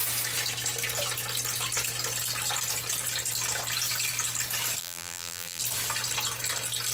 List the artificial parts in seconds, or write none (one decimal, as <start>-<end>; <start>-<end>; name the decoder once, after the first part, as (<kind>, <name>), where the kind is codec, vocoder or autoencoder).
4.8-5.6 (vocoder, BigVGAN v2)